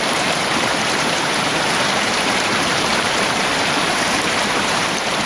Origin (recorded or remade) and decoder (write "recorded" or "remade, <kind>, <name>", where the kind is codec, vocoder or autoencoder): remade, vocoder, BigVGAN v2